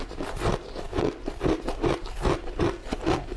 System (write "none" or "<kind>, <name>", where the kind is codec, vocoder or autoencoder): none